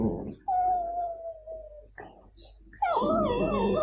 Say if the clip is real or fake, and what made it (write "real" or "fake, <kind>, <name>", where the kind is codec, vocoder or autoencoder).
real